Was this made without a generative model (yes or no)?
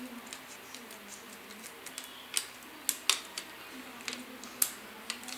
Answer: yes